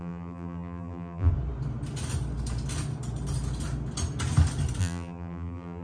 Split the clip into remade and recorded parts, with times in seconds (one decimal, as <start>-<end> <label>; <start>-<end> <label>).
0.0-1.3 remade; 1.3-4.8 recorded; 4.8-5.8 remade